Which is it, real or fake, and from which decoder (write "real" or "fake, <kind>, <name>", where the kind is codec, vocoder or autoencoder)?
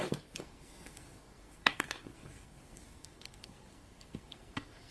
fake, codec, SNAC